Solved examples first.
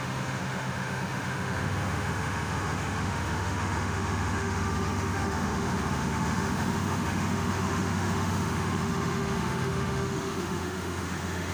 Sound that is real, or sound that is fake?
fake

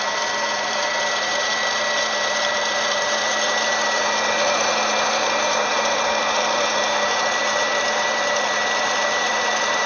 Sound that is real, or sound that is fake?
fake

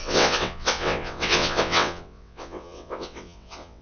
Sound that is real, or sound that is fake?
fake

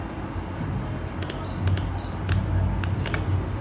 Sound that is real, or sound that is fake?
real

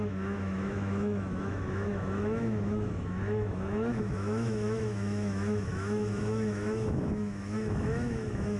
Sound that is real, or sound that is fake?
fake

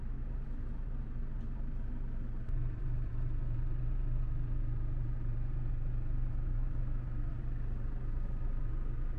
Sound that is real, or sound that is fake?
fake